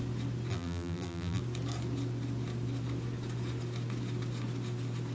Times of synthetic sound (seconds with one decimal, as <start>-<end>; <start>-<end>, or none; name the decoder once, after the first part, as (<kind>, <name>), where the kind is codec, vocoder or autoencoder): 0.5-1.4 (vocoder, BigVGAN v2)